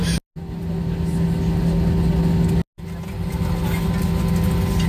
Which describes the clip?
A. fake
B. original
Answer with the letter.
B